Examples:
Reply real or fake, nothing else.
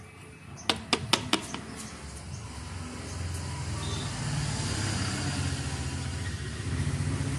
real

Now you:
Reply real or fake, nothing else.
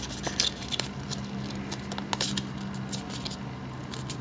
real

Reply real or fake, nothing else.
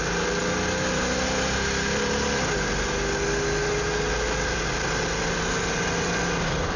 real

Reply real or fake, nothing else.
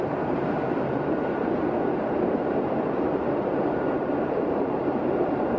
fake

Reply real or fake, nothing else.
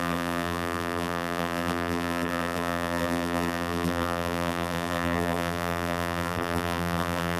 fake